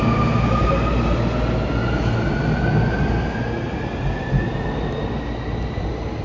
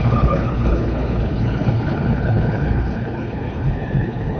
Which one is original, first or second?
first